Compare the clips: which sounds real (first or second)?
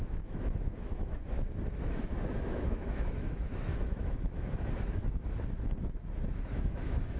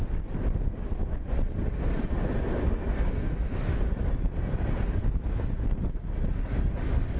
second